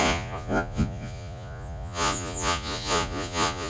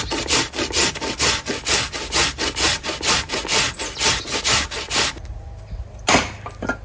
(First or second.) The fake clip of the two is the first